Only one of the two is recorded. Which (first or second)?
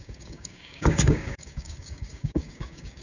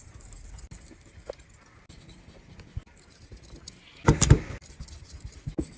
second